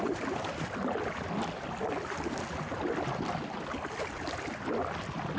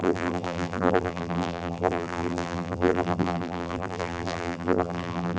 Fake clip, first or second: second